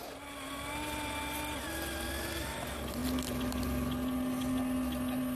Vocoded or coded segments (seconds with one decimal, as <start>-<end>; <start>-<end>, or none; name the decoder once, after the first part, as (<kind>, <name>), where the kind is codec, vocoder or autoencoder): none